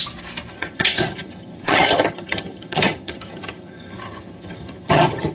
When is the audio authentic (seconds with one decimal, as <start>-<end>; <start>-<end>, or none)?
0.0-0.5